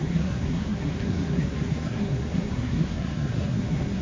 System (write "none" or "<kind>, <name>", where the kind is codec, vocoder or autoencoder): codec, SNAC